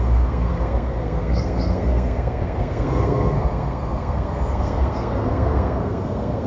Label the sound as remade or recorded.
remade